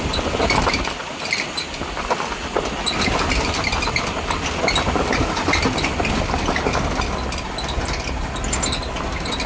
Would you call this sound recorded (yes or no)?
yes